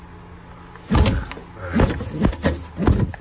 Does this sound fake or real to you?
real